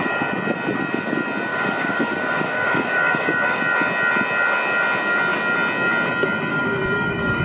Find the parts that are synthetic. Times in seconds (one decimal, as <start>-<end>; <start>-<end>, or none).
1.5-3.6; 6.5-7.4